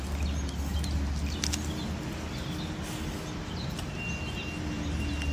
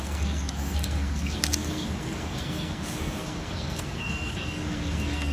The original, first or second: first